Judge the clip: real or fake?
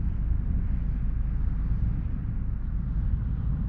real